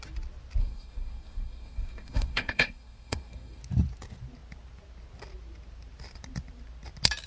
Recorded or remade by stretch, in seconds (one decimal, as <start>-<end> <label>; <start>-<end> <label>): 0.0-0.6 recorded; 0.6-3.6 remade; 3.6-7.3 recorded